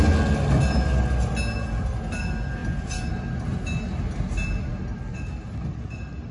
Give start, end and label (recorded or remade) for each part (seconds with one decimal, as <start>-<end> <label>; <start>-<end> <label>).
0.0-6.3 recorded